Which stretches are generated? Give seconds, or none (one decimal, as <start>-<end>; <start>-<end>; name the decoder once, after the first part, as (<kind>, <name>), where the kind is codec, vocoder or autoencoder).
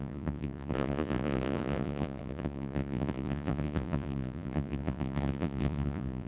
0.0-6.3 (vocoder, Vocos)